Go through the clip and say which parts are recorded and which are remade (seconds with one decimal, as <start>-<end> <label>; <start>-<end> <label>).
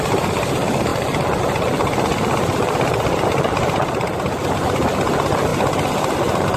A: 0.0-6.6 recorded